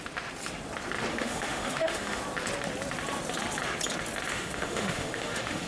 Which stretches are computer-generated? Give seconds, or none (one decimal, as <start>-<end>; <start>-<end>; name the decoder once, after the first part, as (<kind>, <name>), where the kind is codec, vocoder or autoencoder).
1.1-2.2 (autoencoder, DAC-VAE); 4.3-5.7